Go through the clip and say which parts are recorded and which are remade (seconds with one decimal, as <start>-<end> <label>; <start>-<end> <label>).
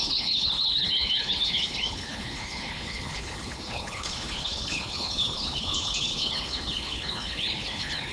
0.0-8.1 remade